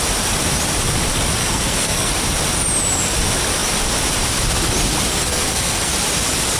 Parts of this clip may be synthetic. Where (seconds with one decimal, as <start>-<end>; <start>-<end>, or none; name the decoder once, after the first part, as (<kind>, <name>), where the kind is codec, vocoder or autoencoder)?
1.4-2.1 (codec, SNAC); 5.1-5.9